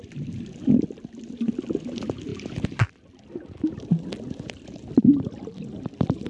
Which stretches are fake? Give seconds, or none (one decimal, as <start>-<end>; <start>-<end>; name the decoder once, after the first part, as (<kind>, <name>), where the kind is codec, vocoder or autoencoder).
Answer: none